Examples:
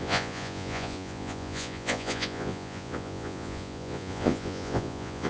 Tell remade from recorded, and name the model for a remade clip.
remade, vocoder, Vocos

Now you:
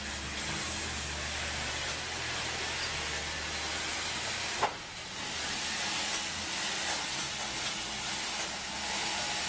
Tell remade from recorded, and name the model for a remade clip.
recorded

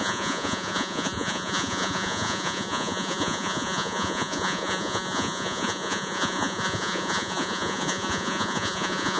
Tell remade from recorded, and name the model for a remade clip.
remade, vocoder, Vocos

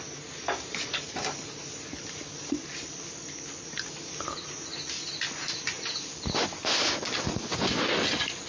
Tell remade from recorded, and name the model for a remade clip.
recorded